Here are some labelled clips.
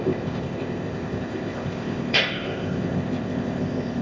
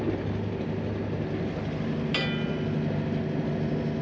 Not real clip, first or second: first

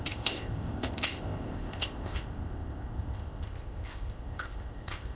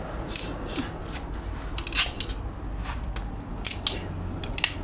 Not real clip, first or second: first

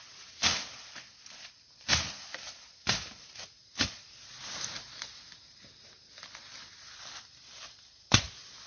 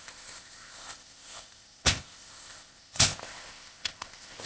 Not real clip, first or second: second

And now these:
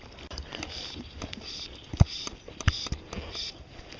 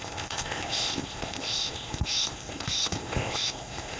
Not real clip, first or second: second